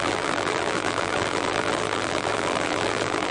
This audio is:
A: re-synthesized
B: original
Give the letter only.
A